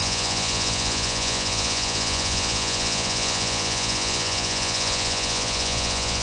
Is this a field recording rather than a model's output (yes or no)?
no